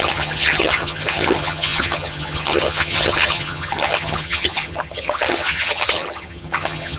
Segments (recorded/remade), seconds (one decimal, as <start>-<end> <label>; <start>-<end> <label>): 0.0-7.0 remade